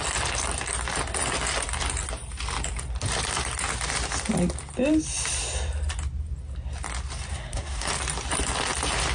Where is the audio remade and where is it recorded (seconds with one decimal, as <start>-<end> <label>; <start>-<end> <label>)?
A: 0.0-7.3 recorded; 7.3-7.9 remade; 7.9-9.1 recorded